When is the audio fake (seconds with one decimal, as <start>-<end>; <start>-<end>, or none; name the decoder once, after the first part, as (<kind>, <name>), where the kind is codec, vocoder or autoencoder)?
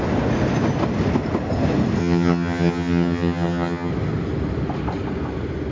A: 2.0-3.9 (vocoder, HiFi-GAN)